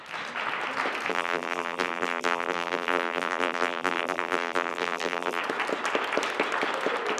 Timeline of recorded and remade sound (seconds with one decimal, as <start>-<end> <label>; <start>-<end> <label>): 0.0-1.1 recorded; 1.1-5.4 remade; 5.4-7.2 recorded